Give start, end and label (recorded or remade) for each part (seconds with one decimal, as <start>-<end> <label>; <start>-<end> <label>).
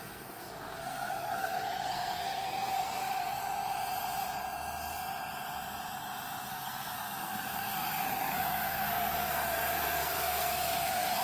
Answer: 0.0-3.4 remade; 3.4-6.5 recorded; 6.5-11.2 remade